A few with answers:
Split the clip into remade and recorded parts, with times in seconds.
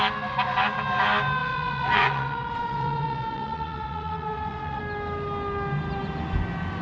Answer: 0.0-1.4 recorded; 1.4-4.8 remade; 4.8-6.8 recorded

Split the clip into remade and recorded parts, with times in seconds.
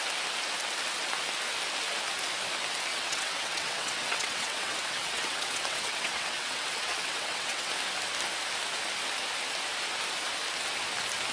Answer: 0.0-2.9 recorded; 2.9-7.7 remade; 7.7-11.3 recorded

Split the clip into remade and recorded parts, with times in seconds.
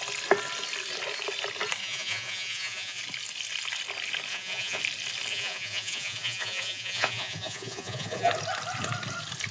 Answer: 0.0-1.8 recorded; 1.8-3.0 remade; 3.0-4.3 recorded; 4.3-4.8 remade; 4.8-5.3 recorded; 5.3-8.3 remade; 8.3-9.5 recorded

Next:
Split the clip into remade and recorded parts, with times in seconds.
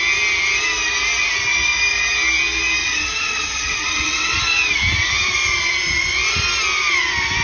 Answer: 0.0-2.8 recorded; 2.8-4.4 remade; 4.4-7.4 recorded